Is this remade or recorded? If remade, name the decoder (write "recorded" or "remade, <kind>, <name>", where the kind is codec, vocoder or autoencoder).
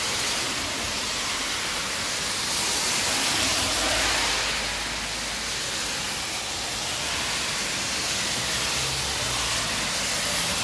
recorded